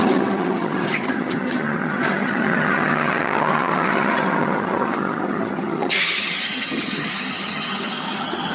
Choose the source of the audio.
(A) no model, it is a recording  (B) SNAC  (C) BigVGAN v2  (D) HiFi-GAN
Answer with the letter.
D